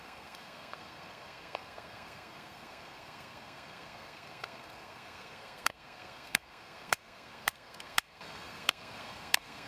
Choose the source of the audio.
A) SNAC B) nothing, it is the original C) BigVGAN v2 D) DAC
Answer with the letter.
A